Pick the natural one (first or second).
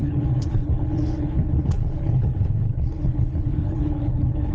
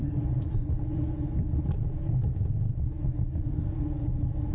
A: second